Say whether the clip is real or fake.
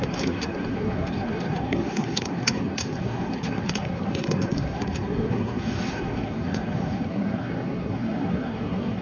fake